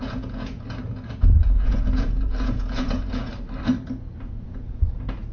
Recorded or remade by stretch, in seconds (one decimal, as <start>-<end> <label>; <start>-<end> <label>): 0.0-3.3 remade; 3.3-4.2 recorded; 4.2-5.3 remade